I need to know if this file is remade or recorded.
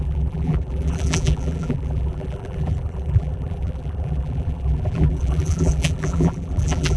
remade